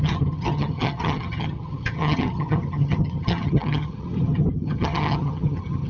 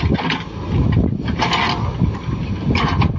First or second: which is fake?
first